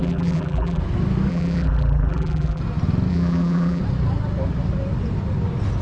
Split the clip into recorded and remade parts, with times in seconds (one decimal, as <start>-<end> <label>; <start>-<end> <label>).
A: 0.0-0.8 remade; 0.8-1.3 recorded; 1.3-2.6 remade; 2.6-3.1 recorded; 3.1-3.8 remade; 3.8-5.8 recorded

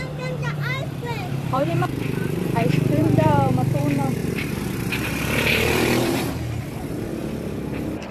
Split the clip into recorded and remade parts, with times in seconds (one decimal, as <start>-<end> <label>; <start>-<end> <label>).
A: 0.0-7.1 remade; 7.1-8.1 recorded

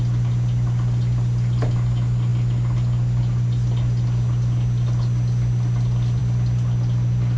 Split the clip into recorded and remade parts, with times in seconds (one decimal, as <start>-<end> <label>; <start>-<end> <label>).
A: 0.0-7.4 recorded

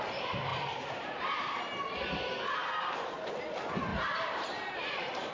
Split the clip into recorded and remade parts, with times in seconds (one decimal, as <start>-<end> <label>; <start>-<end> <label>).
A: 0.0-0.5 recorded; 0.5-1.6 remade; 1.6-2.6 recorded; 2.6-3.3 remade; 3.3-3.9 recorded; 3.9-5.3 remade

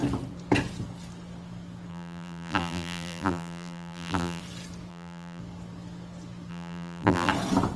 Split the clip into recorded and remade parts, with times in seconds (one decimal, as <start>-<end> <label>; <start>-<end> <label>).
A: 0.0-1.9 recorded; 1.9-4.4 remade; 4.4-4.9 recorded; 4.9-5.4 remade; 5.4-6.5 recorded; 6.5-7.3 remade; 7.3-7.8 recorded